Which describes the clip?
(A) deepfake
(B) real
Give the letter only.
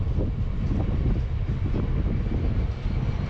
B